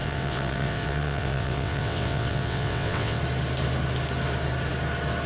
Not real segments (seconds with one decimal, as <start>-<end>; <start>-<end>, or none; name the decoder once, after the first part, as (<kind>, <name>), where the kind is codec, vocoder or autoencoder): 0.0-3.2 (vocoder, WaveNeXt)